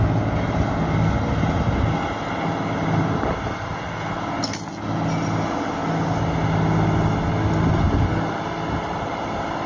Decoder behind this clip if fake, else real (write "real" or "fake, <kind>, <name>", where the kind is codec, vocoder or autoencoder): real